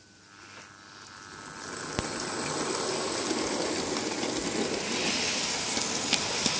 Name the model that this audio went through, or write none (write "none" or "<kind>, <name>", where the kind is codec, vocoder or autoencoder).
none